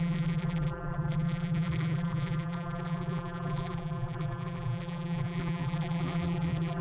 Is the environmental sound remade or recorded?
remade